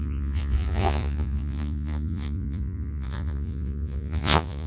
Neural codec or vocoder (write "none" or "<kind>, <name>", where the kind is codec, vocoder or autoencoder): vocoder, Vocos